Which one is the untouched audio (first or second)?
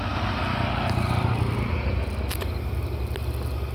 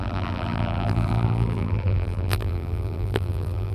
first